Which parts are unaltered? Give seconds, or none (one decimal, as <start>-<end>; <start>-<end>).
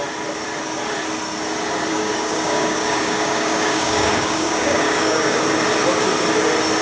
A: 0.0-1.9; 5.4-6.8